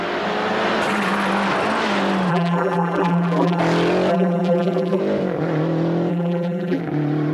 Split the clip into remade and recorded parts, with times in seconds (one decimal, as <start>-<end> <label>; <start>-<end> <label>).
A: 0.0-2.3 recorded; 2.3-3.6 remade; 3.6-4.1 recorded; 4.1-5.0 remade; 5.0-6.1 recorded; 6.1-6.8 remade; 6.8-7.3 recorded